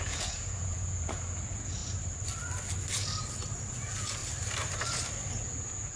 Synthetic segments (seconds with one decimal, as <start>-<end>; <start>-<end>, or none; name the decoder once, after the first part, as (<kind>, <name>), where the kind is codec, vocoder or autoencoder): 0.0-1.8 (vocoder, Vocos); 3.7-4.2; 5.3-6.0